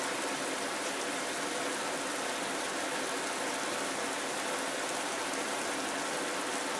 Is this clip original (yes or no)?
yes